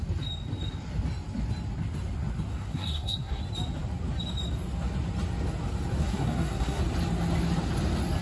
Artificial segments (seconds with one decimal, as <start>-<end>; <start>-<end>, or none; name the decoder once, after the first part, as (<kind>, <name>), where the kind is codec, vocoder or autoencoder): 2.5-3.4 (codec, SNAC); 6.0-6.8